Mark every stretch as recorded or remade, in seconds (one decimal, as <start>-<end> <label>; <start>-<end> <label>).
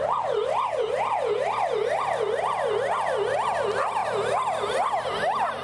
0.0-5.6 recorded